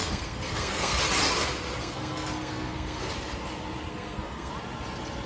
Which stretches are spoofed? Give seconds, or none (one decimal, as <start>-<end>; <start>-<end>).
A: 0.0-1.0; 1.8-3.0; 3.9-4.5